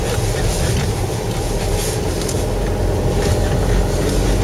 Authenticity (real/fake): real